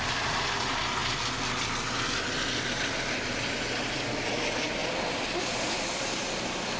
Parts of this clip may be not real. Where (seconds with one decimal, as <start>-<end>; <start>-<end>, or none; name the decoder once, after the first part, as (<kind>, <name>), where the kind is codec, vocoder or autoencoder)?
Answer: none